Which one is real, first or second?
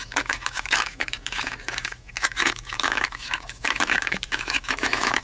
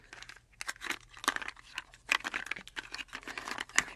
second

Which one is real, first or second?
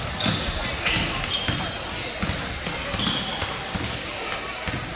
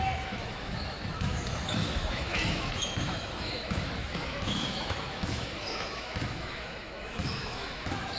first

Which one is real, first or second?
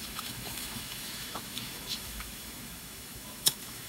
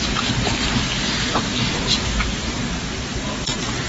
second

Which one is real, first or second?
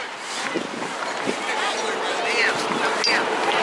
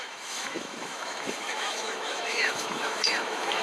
first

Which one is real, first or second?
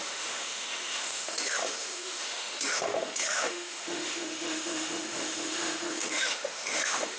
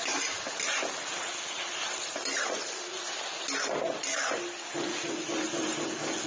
second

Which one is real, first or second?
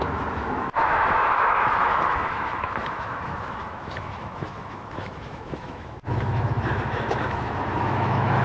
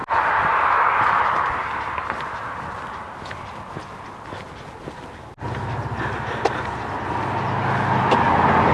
second